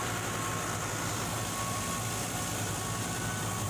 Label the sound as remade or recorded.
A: recorded